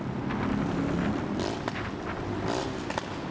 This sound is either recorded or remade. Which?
recorded